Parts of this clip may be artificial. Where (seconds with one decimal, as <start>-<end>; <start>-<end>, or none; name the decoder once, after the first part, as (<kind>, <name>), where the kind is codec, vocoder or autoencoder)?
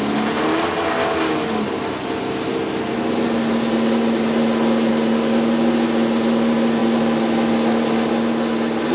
none